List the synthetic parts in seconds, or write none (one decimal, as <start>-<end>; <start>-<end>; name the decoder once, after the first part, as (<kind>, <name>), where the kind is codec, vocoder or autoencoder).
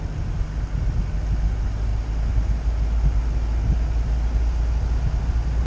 none